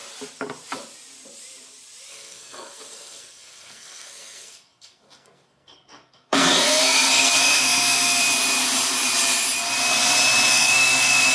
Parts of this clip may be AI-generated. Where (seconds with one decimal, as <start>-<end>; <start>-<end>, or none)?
2.1-8.2; 10.5-11.3